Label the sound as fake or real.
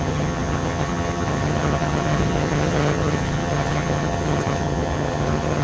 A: fake